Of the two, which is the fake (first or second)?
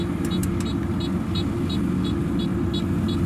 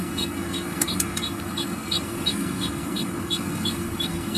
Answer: second